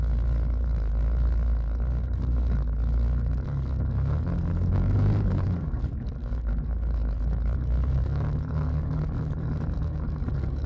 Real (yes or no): no